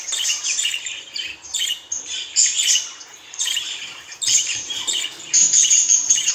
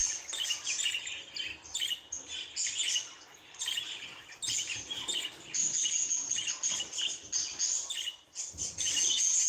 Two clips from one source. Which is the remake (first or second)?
first